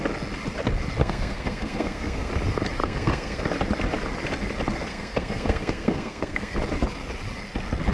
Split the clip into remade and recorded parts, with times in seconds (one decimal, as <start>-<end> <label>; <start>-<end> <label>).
0.0-1.0 recorded; 1.0-2.3 remade; 2.3-2.8 recorded; 2.8-3.4 remade; 3.4-4.9 recorded; 4.9-6.6 remade; 6.6-7.9 recorded